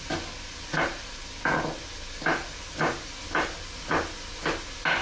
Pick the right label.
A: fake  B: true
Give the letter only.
B